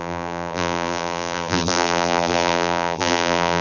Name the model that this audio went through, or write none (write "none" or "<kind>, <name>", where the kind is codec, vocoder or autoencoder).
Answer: vocoder, BigVGAN v2